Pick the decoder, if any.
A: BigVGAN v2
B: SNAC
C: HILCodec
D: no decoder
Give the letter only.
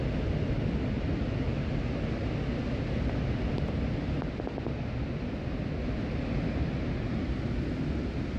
D